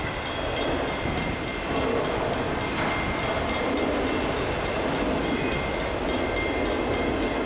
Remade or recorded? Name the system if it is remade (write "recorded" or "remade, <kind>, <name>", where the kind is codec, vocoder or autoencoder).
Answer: recorded